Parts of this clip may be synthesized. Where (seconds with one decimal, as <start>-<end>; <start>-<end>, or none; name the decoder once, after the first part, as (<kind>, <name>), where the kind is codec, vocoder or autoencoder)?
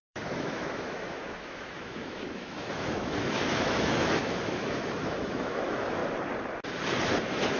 0.0-6.0 (autoencoder, DAC-VAE)